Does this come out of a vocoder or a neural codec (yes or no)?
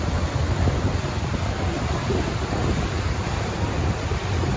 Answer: yes